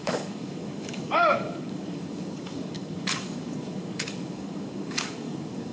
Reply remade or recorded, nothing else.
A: remade